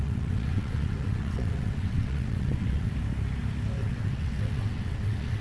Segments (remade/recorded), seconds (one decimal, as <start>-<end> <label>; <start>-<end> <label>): 0.0-2.9 remade; 2.9-3.8 recorded; 3.8-5.4 remade